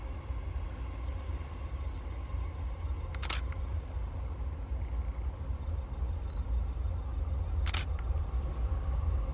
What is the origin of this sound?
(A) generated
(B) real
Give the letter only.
B